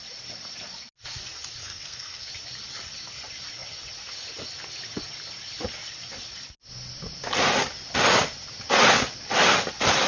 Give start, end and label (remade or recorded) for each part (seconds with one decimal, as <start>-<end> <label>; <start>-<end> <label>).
0.0-1.6 recorded; 1.6-2.3 remade; 2.3-10.1 recorded